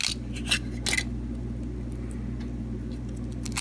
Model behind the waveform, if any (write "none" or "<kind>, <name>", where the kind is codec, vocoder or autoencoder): none